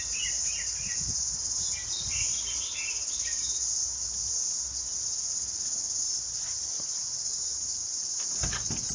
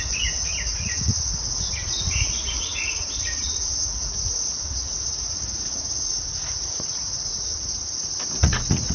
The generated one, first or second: second